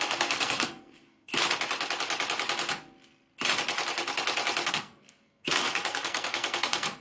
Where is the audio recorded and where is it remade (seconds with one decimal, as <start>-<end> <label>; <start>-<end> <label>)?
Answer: 0.0-1.3 remade; 1.3-4.7 recorded; 4.7-7.0 remade